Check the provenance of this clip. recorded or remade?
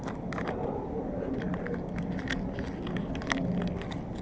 recorded